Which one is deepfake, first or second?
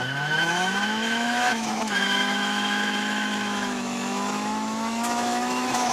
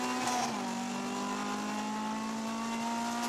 first